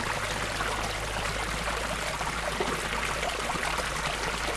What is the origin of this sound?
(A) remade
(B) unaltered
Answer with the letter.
B